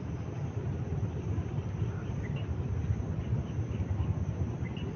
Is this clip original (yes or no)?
yes